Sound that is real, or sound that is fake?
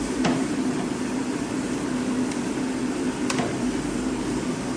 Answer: fake